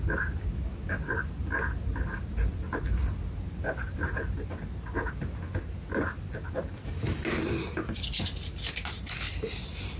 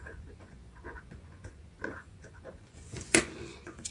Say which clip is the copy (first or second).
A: second